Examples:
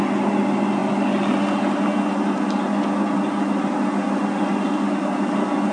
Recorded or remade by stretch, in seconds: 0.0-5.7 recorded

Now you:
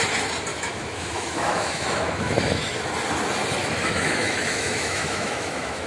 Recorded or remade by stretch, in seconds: 0.0-0.5 recorded; 0.5-2.9 remade; 2.9-3.6 recorded; 3.6-5.9 remade

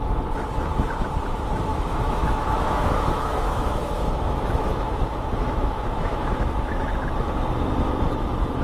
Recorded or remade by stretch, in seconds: 0.0-1.7 recorded; 1.7-6.9 remade; 6.9-8.6 recorded

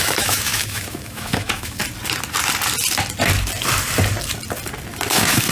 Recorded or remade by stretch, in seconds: 0.0-1.8 remade; 1.8-5.1 recorded; 5.1-5.5 remade

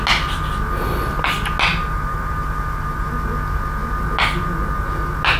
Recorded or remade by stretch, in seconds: 0.0-1.7 recorded; 1.7-3.1 remade; 3.1-5.4 recorded

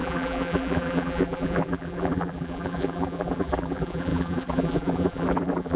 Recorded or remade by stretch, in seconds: 0.0-5.8 remade

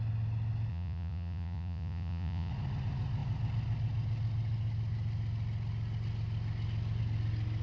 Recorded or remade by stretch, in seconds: 0.0-0.7 recorded; 0.7-2.5 remade; 2.5-7.6 recorded

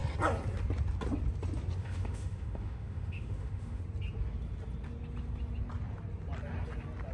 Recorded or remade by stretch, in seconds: 0.0-1.8 recorded; 1.8-3.8 remade; 3.8-7.1 recorded